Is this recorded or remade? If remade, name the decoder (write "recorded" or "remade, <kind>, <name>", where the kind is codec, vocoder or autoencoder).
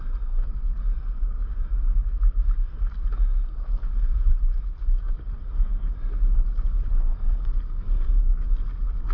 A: recorded